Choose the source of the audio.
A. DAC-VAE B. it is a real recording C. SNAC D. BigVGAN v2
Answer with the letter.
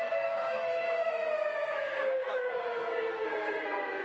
C